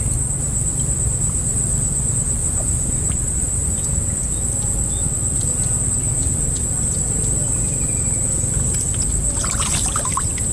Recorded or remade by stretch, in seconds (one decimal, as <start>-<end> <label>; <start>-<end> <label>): 0.0-2.4 recorded; 2.4-3.2 remade; 3.2-10.5 recorded